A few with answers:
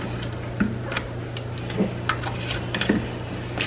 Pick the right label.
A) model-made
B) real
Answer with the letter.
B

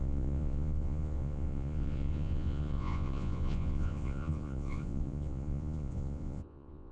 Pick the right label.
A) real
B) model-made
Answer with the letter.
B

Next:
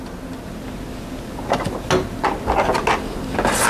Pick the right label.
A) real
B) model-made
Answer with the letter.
A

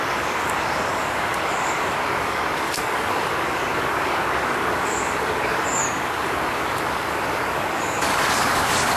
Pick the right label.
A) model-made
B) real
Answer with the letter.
A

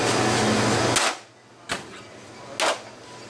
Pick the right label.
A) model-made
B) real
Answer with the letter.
B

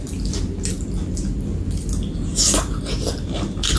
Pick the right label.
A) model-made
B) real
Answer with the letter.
B